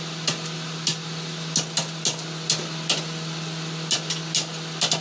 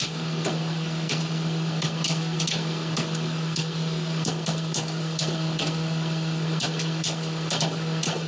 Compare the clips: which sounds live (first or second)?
first